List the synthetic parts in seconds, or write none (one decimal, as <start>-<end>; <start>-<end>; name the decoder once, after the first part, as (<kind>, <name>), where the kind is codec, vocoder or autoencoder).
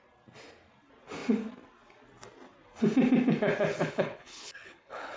3.7-5.2 (codec, HILCodec)